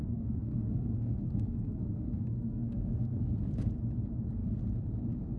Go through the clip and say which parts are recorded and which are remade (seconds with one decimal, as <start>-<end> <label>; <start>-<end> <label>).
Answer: 0.0-3.2 remade; 3.2-5.4 recorded